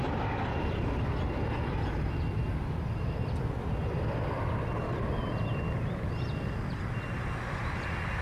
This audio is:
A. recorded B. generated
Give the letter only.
A